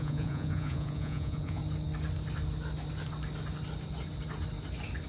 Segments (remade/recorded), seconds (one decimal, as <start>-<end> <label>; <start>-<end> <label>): 0.0-1.6 remade; 1.6-5.1 recorded